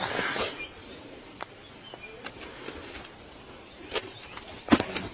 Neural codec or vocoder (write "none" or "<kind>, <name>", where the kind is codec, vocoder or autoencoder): none